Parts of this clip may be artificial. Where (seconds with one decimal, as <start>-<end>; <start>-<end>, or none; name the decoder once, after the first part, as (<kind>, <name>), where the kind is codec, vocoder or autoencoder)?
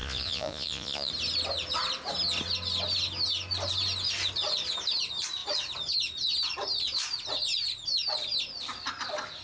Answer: 0.0-1.1 (vocoder, Vocos)